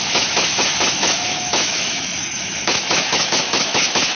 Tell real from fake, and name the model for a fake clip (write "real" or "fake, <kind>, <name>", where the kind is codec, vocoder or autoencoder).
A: fake, autoencoder, DAC-VAE